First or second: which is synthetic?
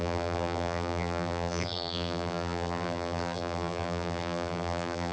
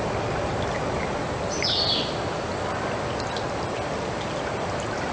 first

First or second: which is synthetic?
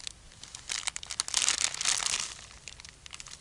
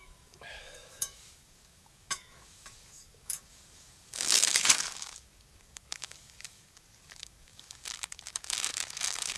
second